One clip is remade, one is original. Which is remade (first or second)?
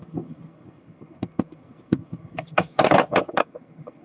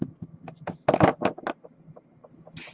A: first